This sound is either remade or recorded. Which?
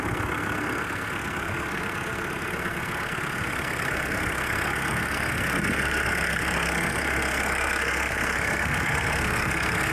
remade